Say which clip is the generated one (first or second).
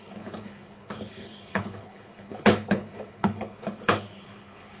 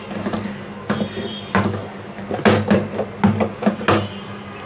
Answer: first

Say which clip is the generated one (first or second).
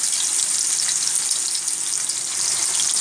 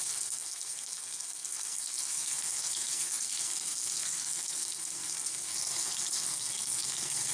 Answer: second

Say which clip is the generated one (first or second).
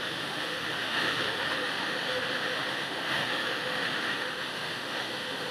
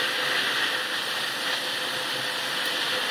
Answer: first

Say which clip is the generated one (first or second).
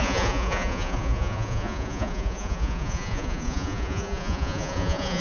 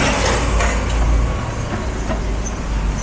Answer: first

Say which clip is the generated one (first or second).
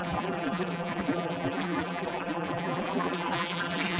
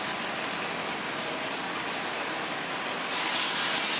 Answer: first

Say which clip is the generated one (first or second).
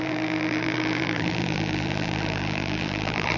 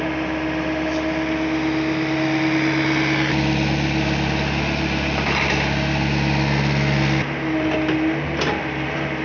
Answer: first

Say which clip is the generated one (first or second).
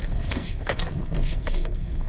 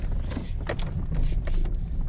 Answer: first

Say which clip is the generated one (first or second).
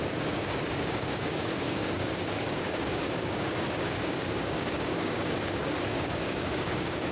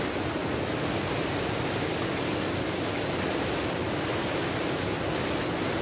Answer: first